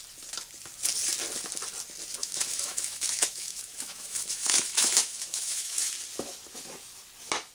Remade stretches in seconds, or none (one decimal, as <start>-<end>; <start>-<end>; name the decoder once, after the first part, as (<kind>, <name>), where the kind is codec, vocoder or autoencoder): 2.2-5.9 (autoencoder, DAC-VAE)